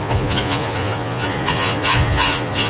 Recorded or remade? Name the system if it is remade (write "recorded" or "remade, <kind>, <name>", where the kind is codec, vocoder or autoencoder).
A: remade, vocoder, Vocos